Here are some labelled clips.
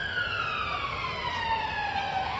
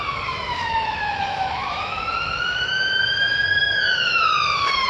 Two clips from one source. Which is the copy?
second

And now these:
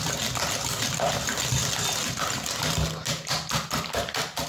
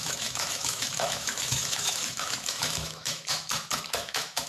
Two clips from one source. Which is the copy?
second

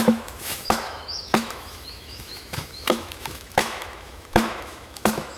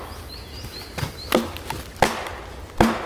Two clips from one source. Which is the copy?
first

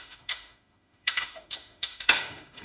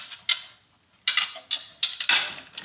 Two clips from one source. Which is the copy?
first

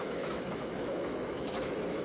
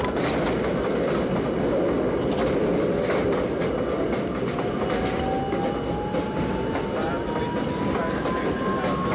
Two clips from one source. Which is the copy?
first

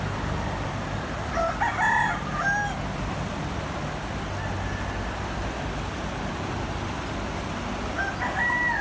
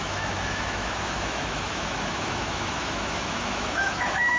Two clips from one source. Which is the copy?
second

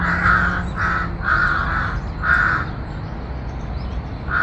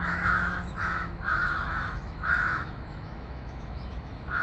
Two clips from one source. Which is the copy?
second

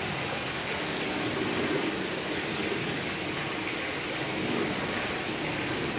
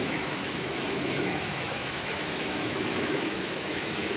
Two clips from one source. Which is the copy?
second